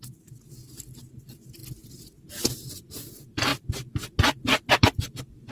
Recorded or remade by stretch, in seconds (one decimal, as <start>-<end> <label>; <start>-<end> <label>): 0.0-1.6 remade; 1.6-2.7 recorded; 2.7-3.5 remade; 3.5-4.7 recorded; 4.7-5.5 remade